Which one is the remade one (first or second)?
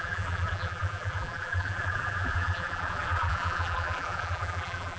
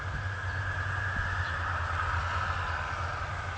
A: first